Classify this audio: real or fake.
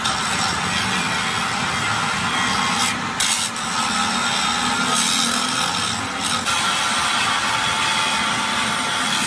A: real